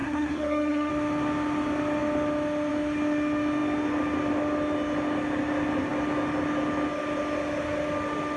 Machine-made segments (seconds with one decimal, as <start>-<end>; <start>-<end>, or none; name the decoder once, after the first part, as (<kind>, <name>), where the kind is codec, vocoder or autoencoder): 0.0-0.9 (codec, SNAC)

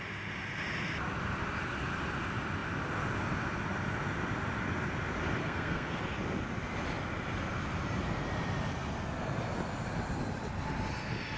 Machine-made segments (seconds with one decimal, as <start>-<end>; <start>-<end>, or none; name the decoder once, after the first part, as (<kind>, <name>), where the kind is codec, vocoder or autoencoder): 5.4-6.0 (codec, SNAC)

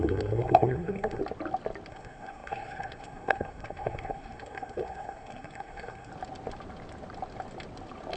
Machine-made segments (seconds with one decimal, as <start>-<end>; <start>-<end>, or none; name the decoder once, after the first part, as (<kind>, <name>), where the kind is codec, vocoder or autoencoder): 0.0-1.2 (codec, SNAC); 1.9-6.1